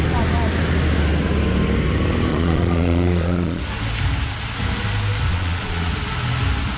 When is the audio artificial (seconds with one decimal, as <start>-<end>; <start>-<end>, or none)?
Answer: 2.3-3.6; 5.3-5.9